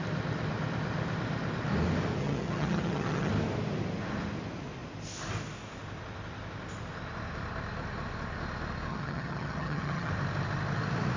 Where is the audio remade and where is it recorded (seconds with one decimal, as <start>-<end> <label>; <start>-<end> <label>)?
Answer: 0.0-2.2 recorded; 2.2-3.3 remade; 3.3-8.9 recorded; 8.9-10.1 remade; 10.1-11.2 recorded